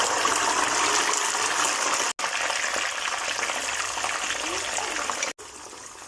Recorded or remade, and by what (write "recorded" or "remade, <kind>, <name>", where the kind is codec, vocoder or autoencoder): recorded